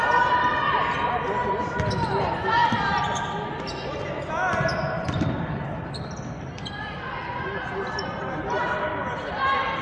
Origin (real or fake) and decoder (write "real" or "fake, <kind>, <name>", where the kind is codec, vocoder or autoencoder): real